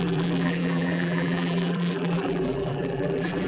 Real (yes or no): no